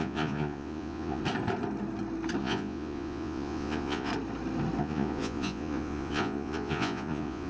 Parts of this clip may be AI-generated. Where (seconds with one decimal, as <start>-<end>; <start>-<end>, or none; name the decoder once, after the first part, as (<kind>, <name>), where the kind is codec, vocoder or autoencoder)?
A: 0.0-1.2 (vocoder, Vocos); 2.4-4.1; 4.8-7.5